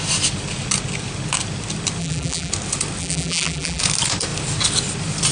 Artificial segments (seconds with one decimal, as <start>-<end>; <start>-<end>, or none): 2.0-2.5; 3.0-3.8